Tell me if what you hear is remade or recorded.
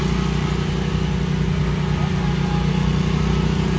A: recorded